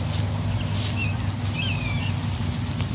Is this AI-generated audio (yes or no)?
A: no